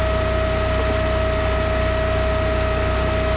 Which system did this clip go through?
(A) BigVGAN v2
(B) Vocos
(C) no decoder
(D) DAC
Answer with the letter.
C